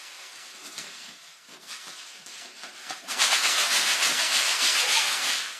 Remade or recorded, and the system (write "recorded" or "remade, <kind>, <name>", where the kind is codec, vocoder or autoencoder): remade, codec, SNAC